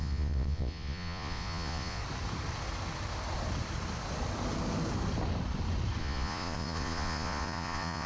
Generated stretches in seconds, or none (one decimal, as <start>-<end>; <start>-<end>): 0.0-2.0; 6.0-8.1